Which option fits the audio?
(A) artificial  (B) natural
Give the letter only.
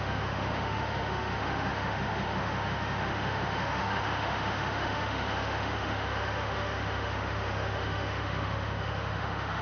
A